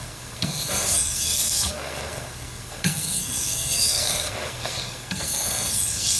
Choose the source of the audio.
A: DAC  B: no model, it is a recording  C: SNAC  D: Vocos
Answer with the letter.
C